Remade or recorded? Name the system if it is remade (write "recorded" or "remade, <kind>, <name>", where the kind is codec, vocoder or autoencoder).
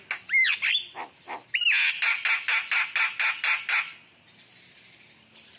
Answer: recorded